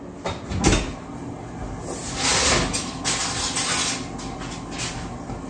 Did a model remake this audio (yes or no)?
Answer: no